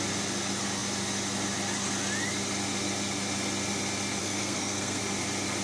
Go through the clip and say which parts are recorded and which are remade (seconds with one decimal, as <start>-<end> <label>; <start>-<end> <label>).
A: 0.0-4.2 recorded; 4.2-5.0 remade; 5.0-5.6 recorded